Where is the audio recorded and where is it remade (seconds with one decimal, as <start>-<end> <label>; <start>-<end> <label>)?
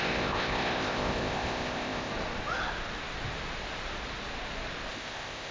0.0-2.1 remade; 2.1-4.9 recorded; 4.9-5.5 remade